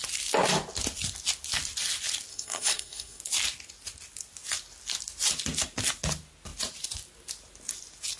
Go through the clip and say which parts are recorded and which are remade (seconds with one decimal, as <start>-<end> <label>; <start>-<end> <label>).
0.0-2.3 recorded; 2.3-3.2 remade; 3.2-8.2 recorded